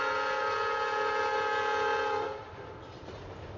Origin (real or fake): real